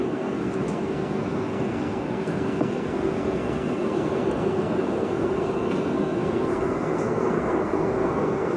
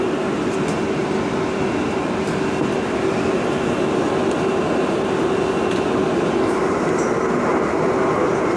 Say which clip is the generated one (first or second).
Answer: first